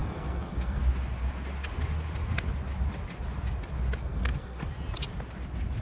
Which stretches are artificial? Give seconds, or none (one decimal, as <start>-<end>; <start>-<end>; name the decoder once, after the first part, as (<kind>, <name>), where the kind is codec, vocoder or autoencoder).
0.0-0.8 (codec, SNAC); 4.0-4.7